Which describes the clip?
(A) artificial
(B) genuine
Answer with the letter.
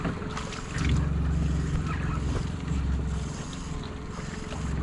B